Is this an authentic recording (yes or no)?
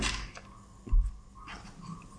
yes